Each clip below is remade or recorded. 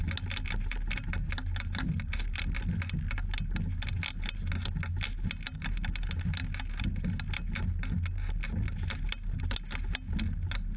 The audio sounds recorded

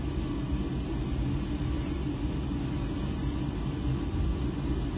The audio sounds recorded